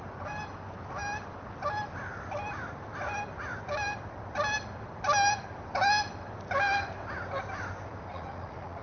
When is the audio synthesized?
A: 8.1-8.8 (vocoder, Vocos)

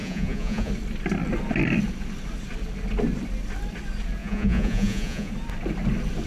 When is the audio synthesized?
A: 0.0-0.7 (vocoder, Vocos); 4.2-5.3

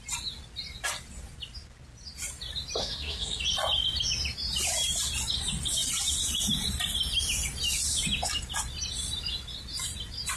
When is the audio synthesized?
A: 2.8-3.4 (codec, SNAC)